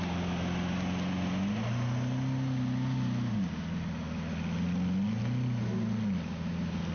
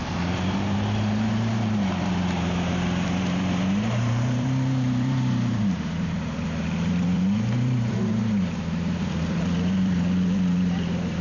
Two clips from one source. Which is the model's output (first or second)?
second